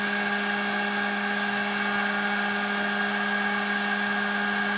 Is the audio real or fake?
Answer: real